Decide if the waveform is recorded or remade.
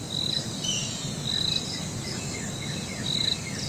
remade